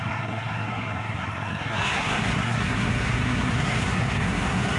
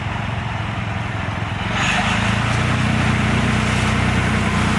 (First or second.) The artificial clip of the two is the first